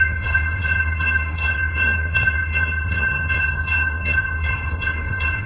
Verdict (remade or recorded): remade